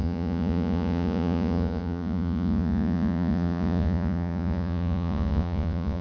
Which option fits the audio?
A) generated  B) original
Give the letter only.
A